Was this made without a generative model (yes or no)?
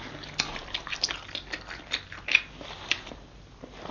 yes